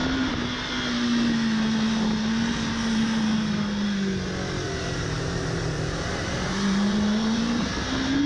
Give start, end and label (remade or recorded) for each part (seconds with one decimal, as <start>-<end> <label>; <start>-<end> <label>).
0.0-4.8 recorded; 4.8-7.7 remade; 7.7-8.3 recorded